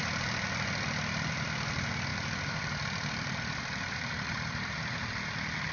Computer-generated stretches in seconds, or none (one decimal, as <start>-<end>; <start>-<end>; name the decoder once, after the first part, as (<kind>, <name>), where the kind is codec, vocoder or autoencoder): 2.1-5.1 (vocoder, BigVGAN v2)